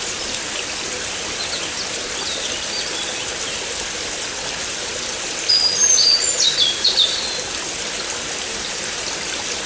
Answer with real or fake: real